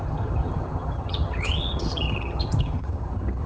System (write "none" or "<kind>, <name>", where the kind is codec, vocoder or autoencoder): vocoder, HiFi-GAN